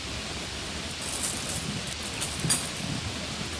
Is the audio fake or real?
real